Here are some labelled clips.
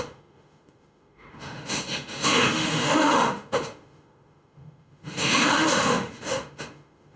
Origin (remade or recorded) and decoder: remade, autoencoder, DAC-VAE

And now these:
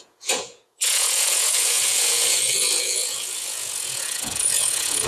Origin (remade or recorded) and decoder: remade, vocoder, Vocos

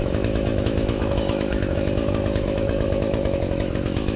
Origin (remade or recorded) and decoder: remade, autoencoder, DAC-VAE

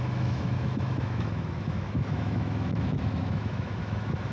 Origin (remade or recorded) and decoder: remade, autoencoder, DAC-VAE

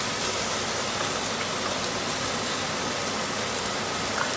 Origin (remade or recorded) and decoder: recorded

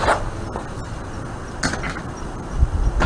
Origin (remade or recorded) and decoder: recorded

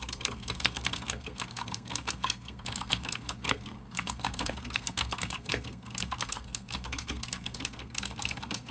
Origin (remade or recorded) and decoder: remade, codec, SNAC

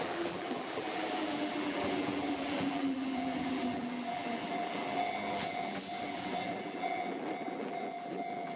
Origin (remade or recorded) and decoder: remade, vocoder, BigVGAN v2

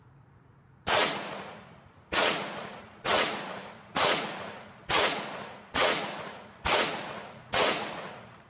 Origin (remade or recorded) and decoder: remade, vocoder, Vocos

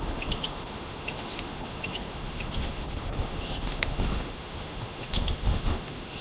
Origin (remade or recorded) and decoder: remade, autoencoder, DAC-VAE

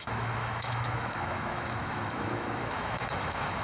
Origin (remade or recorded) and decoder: remade, autoencoder, DAC-VAE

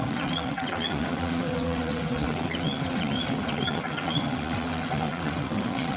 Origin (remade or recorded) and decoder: remade, vocoder, WaveNeXt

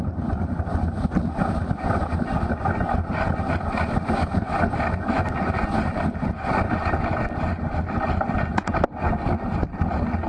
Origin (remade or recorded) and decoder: recorded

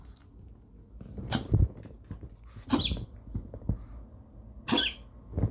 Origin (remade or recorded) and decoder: recorded